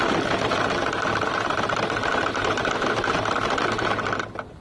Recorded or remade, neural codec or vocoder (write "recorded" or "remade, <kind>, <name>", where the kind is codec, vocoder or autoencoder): recorded